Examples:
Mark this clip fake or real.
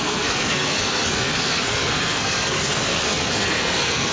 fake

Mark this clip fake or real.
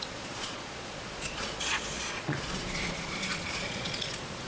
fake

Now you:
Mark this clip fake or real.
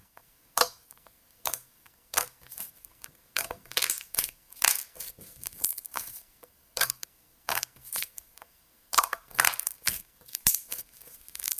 fake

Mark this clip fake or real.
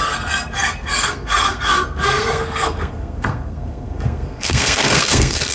fake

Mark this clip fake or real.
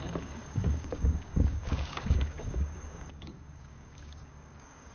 fake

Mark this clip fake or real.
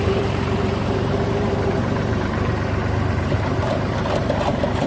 fake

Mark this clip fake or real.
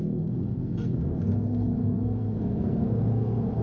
fake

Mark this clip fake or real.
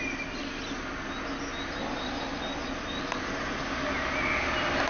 real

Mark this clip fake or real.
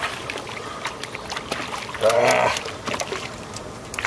real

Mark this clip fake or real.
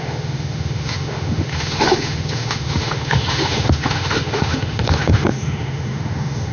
fake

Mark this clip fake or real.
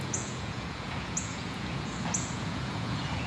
fake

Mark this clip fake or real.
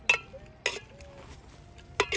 real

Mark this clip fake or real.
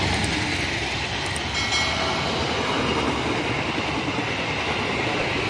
real